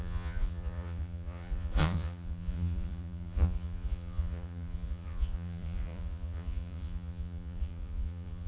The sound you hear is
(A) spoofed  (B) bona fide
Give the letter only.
A